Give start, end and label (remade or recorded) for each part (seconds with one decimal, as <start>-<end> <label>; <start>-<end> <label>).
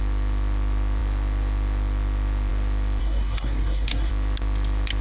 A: 0.0-3.0 recorded; 3.0-4.1 remade; 4.1-5.0 recorded